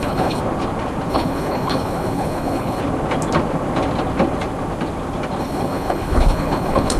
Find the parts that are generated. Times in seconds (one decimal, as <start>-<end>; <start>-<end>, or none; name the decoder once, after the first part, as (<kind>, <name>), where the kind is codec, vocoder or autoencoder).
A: 0.0-0.4 (codec, HILCodec); 1.1-2.8; 5.4-7.0